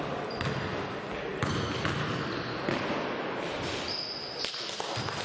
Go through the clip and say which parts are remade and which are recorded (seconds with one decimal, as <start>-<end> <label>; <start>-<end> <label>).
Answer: 0.0-5.2 recorded